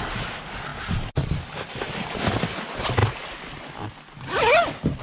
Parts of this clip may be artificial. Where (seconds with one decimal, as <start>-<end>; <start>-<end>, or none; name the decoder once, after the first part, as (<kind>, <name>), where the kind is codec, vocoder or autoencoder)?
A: none